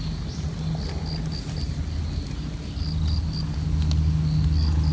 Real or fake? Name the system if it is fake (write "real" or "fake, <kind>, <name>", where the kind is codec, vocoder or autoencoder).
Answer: real